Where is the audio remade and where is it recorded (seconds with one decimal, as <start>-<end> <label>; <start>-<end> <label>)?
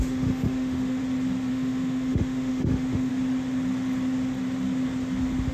0.0-1.0 remade; 1.0-1.5 recorded; 1.5-3.1 remade; 3.1-5.5 recorded